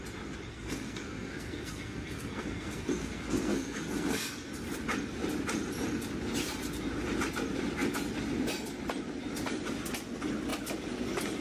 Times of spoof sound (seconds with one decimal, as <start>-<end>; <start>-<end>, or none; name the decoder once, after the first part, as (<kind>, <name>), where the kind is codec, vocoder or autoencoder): 0.5-4.5 (codec, SNAC)